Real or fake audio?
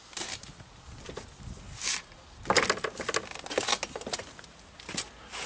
real